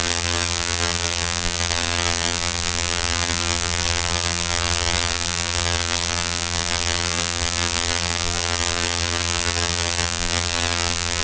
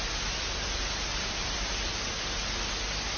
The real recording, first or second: second